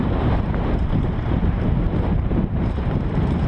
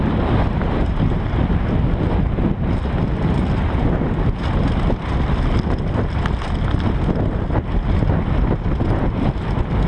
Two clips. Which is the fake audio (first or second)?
first